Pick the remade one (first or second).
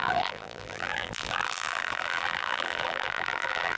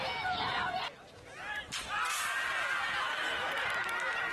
first